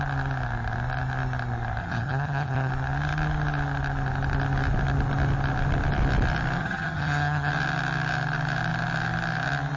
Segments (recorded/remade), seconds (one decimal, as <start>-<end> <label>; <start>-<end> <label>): 0.0-1.8 recorded; 1.8-2.7 remade; 2.7-6.6 recorded; 6.6-7.5 remade; 7.5-9.8 recorded